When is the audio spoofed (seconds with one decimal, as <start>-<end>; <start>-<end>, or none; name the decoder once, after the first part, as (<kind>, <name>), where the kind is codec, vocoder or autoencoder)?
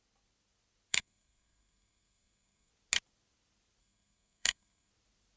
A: 0.9-2.7 (codec, SNAC); 3.8-4.9